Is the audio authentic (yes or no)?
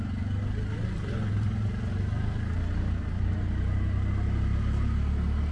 yes